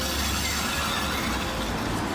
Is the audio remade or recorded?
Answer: recorded